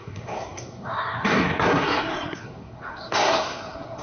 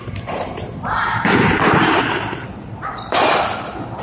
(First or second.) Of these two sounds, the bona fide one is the second